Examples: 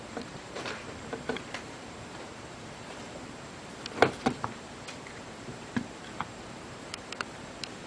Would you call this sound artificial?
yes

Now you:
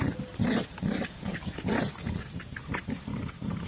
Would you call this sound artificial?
no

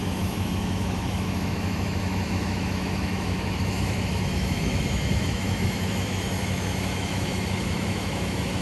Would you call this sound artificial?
yes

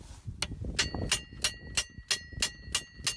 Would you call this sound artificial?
no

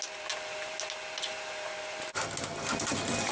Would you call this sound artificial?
no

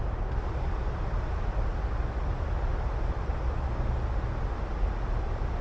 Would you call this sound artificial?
no